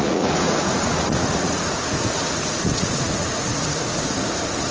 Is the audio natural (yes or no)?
no